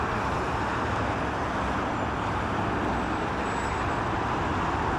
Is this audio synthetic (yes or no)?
no